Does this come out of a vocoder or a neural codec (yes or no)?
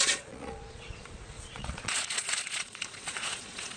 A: yes